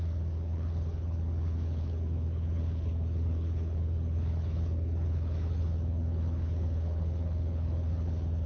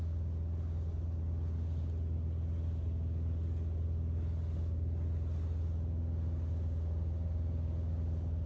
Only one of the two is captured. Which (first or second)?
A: second